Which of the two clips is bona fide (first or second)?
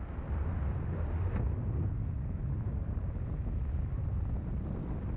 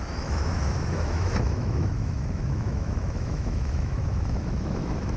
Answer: first